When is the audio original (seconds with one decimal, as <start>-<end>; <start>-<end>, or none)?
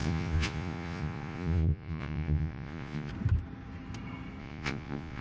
3.1-4.4